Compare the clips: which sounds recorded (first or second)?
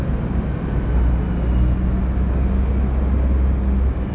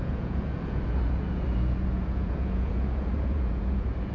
first